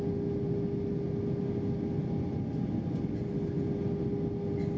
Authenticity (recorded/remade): recorded